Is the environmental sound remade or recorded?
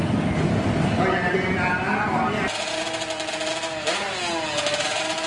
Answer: recorded